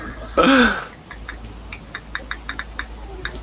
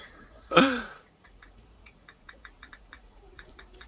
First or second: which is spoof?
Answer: second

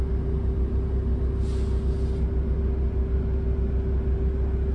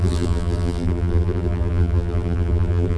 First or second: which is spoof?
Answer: second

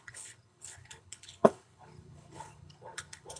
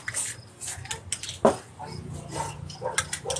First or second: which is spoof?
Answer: first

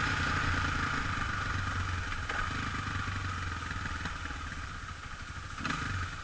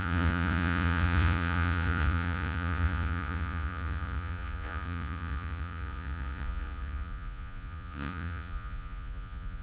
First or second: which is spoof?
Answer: second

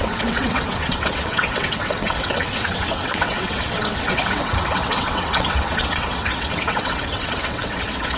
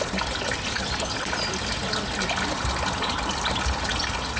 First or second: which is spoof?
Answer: first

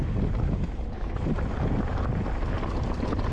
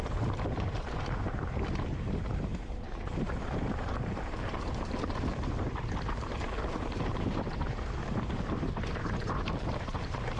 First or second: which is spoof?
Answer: second